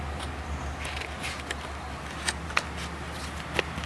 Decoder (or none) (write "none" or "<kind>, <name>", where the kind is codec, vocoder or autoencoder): none